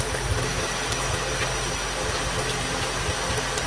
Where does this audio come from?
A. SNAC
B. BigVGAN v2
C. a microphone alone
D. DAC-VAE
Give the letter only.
C